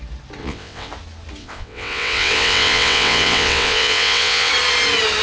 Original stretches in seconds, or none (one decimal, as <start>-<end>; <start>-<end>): 0.0-0.4; 0.9-1.4; 4.5-5.2